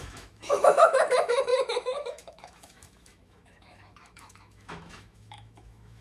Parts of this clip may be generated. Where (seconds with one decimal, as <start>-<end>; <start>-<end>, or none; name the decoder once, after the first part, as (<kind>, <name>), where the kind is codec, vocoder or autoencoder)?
0.0-6.0 (autoencoder, DAC-VAE)